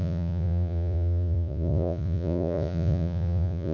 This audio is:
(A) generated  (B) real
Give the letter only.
A